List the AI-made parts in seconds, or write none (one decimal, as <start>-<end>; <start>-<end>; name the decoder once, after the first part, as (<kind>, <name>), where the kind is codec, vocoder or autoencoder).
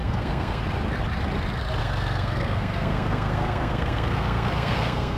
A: 0.0-0.6 (codec, SNAC); 1.8-5.2